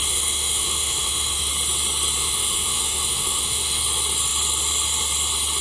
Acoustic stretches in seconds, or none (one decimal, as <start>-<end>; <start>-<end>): 1.5-2.2; 3.8-5.6